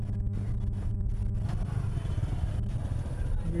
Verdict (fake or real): real